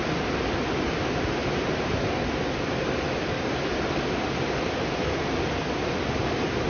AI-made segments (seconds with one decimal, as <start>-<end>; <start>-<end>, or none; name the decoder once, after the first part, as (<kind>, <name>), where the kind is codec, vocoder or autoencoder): none

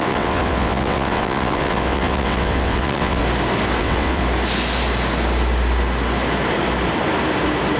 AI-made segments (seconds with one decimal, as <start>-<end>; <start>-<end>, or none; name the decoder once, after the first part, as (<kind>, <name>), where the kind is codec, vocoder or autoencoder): 0.0-3.2 (vocoder, WaveNeXt); 3.8-4.2

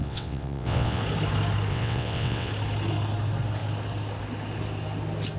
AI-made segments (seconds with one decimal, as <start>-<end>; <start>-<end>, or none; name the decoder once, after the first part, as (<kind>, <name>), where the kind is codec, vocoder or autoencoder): 0.0-1.0 (vocoder, WaveNeXt); 1.7-2.5

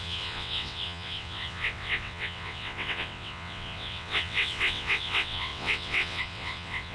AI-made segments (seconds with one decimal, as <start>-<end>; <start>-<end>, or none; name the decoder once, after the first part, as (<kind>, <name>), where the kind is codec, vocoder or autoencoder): 0.0-6.9 (vocoder, WaveNeXt)

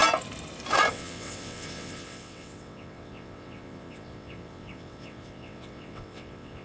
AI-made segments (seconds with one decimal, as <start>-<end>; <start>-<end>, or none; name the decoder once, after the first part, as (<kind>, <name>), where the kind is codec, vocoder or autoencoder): 0.9-6.6 (vocoder, WaveNeXt)